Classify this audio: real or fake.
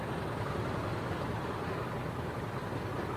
real